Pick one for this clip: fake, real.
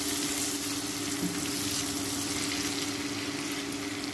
real